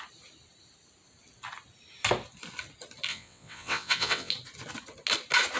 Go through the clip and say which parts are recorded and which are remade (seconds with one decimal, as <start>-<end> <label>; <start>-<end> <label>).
0.0-3.1 recorded; 3.1-4.3 remade; 4.3-5.6 recorded